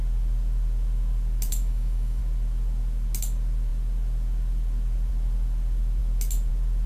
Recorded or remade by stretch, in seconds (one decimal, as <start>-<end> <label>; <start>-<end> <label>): 0.0-1.5 recorded; 1.5-2.2 remade; 2.2-6.9 recorded